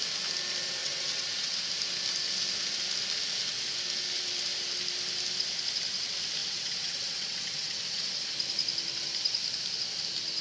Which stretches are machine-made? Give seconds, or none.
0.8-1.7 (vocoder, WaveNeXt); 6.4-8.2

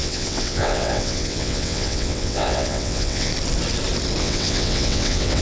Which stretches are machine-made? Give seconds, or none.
0.0-3.3 (vocoder, WaveNeXt); 4.2-5.4

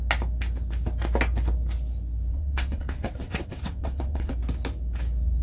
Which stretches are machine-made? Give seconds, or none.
2.3-4.3 (vocoder, WaveNeXt)

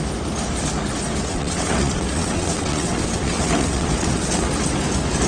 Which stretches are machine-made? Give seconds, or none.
1.3-4.5 (vocoder, WaveNeXt)

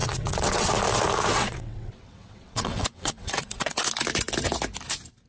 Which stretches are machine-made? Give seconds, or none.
0.0-0.7 (vocoder, WaveNeXt); 1.3-3.8